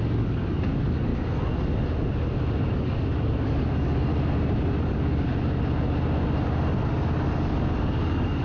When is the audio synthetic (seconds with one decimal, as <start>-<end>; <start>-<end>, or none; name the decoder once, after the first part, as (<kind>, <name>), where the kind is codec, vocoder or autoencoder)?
0.0-1.1 (codec, DAC); 2.7-4.1; 4.8-5.3; 6.9-8.4